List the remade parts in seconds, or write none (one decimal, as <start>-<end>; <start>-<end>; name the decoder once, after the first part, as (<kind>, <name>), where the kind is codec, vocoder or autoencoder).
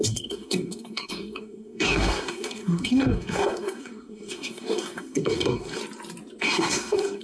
0.0-5.8 (codec, SNAC); 6.4-7.2